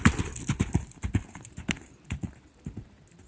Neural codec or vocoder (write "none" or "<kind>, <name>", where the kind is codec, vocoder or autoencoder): none